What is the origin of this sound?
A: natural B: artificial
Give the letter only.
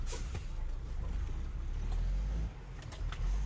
A